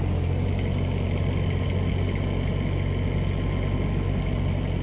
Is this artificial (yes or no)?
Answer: no